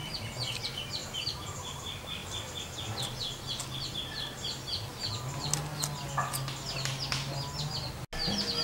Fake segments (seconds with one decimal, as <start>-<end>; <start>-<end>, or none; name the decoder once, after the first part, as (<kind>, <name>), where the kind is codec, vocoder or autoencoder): 0.0-0.6 (vocoder, BigVGAN v2); 1.0-1.8